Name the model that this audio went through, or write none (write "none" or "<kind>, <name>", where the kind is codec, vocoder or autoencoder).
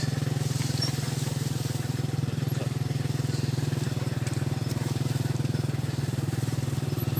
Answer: none